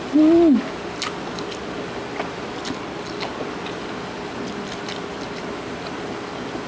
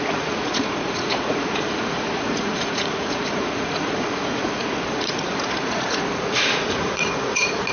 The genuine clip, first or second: first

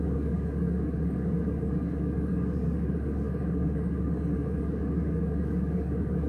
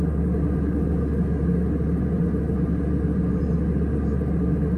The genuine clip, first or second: second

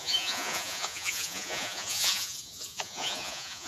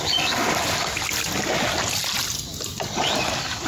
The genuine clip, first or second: second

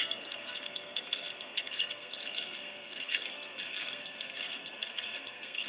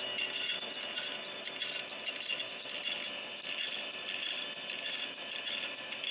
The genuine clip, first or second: second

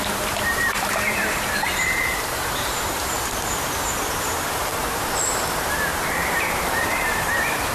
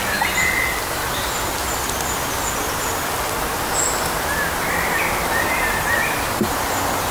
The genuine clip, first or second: second